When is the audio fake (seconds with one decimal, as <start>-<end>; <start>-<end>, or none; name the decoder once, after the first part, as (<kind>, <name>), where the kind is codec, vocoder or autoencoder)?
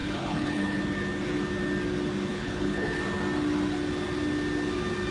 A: 0.0-0.8 (codec, HILCodec); 2.3-3.0